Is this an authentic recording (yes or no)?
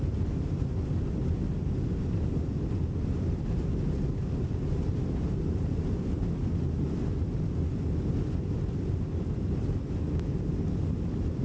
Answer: yes